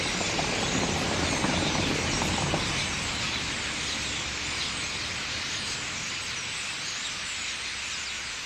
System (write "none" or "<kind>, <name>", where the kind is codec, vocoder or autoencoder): none